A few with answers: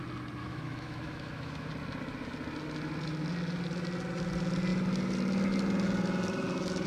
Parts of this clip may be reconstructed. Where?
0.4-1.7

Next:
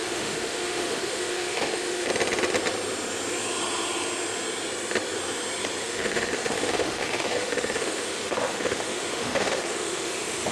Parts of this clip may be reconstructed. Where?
0.0-2.1; 5.8-10.5

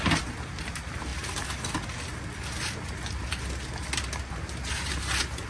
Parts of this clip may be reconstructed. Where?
none

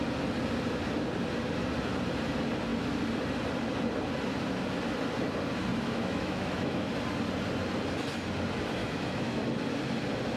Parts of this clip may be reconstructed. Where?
5.7-6.9; 8.8-9.4

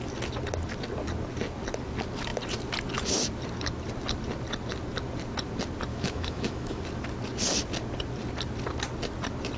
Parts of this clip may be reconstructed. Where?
5.9-6.8

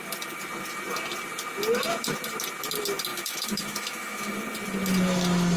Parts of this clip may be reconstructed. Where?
3.1-4.4